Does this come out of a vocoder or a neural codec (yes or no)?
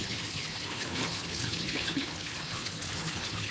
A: yes